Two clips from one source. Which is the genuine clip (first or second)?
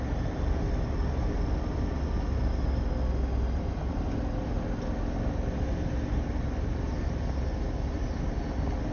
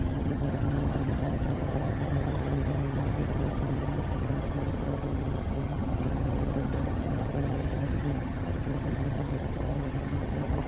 first